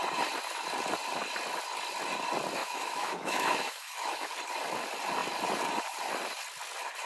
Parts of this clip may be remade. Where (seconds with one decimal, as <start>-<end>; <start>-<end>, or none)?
2.6-4.3